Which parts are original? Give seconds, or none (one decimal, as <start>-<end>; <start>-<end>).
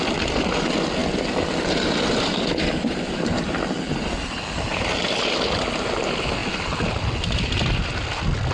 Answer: 0.0-1.0; 5.4-8.5